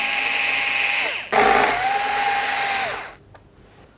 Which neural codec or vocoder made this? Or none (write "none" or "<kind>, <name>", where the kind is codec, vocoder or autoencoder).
none